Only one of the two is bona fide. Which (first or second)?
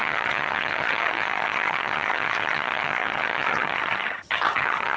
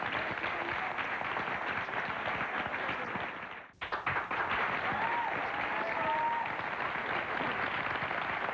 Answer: second